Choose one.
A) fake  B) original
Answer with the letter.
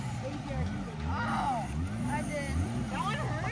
B